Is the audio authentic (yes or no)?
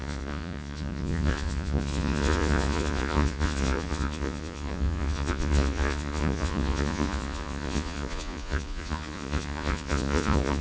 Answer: no